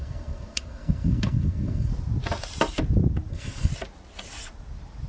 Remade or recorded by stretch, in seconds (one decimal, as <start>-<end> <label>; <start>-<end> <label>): 0.0-1.9 remade; 1.9-3.3 recorded; 3.3-3.7 remade; 3.7-5.1 recorded